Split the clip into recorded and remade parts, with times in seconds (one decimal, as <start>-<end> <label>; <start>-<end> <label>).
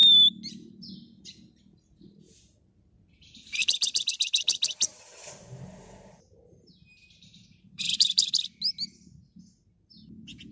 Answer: 0.0-3.6 recorded; 3.6-8.3 remade; 8.3-10.5 recorded